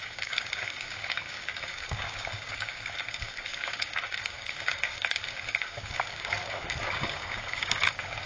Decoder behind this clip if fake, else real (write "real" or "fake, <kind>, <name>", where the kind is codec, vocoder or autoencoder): fake, codec, DAC